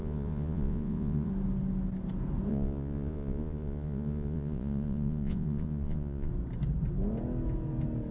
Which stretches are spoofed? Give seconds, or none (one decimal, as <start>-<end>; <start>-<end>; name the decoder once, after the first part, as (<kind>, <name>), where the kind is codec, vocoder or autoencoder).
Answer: 0.0-1.3 (vocoder, Vocos); 2.5-6.3